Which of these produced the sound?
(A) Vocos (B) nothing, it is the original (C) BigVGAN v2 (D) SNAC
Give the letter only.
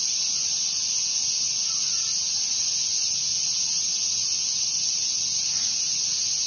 B